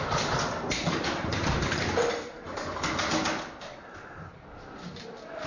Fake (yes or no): no